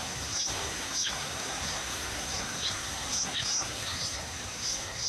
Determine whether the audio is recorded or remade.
remade